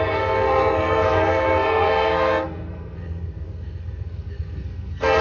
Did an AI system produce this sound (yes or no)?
yes